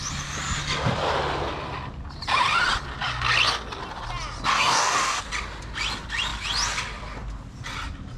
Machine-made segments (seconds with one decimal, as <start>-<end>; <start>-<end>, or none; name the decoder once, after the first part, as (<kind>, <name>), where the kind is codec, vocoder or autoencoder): 4.5-5.2 (codec, DAC)